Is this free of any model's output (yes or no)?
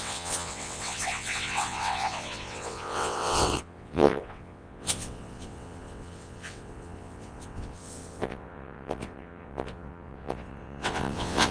no